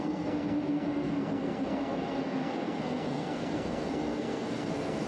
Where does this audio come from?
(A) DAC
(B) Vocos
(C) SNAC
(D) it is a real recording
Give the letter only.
C